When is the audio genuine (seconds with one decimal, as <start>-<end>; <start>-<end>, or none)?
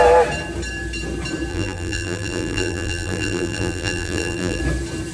0.0-1.5; 4.6-5.1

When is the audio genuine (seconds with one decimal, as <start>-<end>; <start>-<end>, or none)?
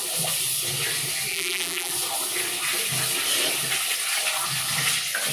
0.0-1.3; 1.9-5.3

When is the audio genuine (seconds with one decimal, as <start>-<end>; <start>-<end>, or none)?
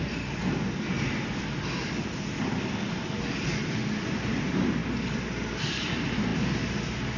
0.4-4.1; 4.8-5.5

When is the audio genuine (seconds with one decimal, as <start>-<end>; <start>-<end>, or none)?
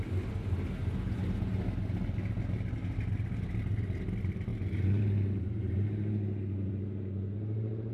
0.0-4.5; 6.7-7.9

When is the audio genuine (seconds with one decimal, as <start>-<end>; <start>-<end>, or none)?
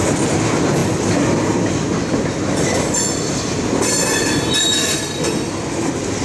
0.0-6.2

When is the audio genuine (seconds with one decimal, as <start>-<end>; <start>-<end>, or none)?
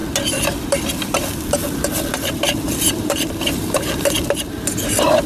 0.0-0.6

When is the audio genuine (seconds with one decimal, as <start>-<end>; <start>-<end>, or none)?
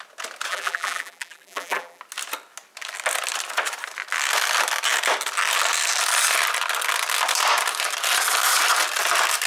0.0-0.5; 2.0-9.5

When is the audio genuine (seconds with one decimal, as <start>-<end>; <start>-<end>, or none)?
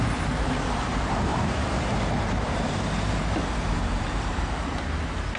0.0-1.3; 4.5-5.4